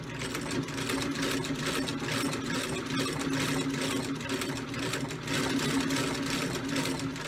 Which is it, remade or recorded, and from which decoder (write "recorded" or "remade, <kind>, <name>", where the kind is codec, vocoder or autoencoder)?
recorded